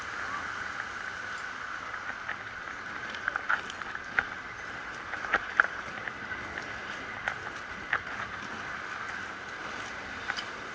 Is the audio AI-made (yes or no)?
no